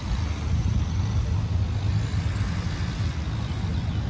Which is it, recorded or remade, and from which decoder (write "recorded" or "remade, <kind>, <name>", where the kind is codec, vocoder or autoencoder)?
recorded